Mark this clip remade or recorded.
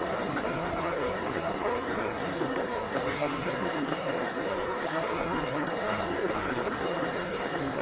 remade